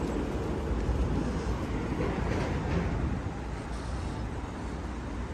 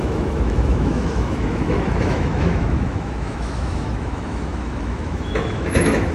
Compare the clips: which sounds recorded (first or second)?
first